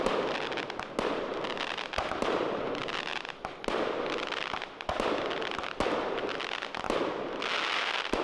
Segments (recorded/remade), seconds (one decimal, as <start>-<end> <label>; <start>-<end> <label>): 0.0-8.2 recorded